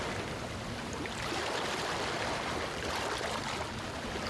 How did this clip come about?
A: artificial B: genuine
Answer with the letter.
B